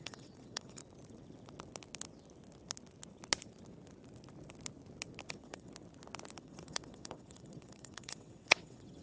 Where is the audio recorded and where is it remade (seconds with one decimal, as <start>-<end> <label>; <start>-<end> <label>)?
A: 0.0-0.8 remade; 0.8-5.3 recorded; 5.3-5.7 remade; 5.7-6.4 recorded; 6.4-9.0 remade